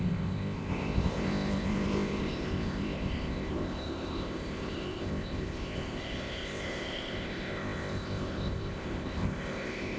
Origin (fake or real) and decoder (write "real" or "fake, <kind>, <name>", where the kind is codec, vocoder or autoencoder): fake, codec, ZipCodec